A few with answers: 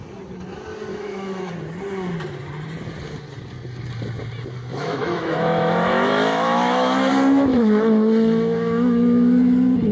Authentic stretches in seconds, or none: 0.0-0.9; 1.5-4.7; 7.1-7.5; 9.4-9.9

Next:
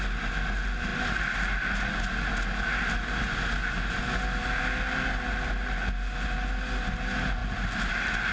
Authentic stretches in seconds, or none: 0.0-8.3

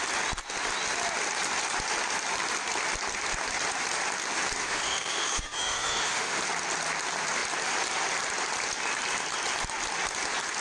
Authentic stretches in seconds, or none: 0.0-4.6; 6.4-10.6

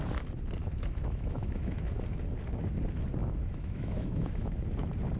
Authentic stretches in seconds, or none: 0.0-0.6; 1.9-3.2; 4.6-5.2

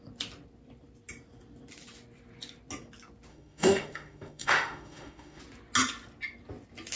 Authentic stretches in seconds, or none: 0.0-3.3; 5.4-7.0

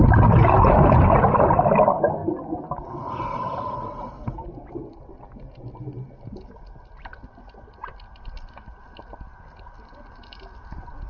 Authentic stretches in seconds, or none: 0.0-11.1

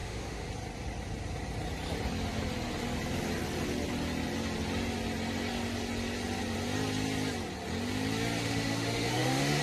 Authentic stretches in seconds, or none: 0.5-8.4

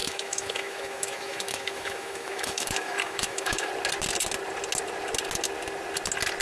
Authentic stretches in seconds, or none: 3.7-6.4